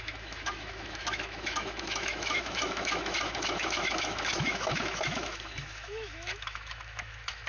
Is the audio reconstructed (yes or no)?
yes